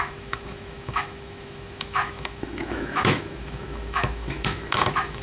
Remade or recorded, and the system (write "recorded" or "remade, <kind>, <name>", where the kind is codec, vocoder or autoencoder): remade, autoencoder, DAC-VAE